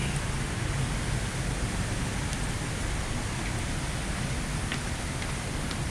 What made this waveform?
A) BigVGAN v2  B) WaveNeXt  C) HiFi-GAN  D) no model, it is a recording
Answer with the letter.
D